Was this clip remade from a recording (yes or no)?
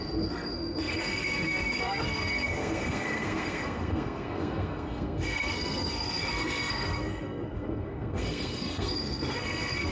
yes